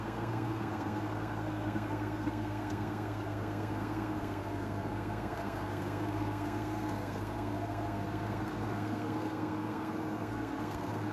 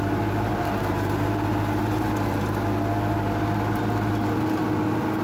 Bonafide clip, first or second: second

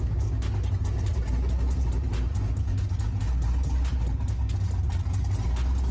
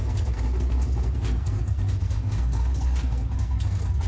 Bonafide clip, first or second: first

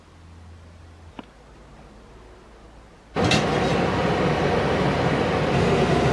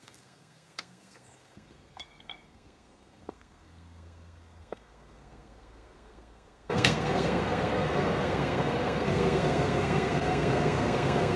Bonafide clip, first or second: first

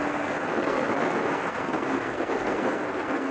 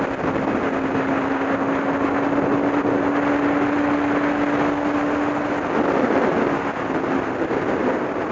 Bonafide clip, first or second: second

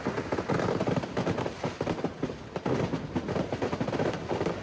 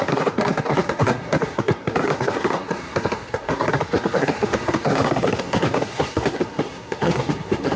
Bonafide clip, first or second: first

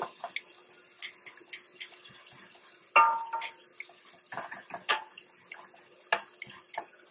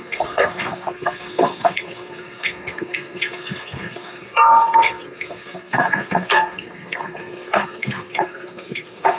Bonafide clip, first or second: first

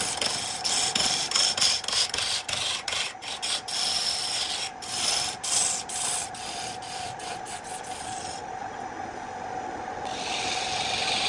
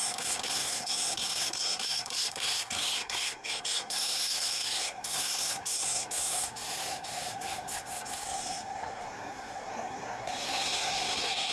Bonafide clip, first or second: first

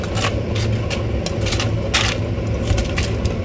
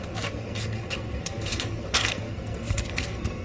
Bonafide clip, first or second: first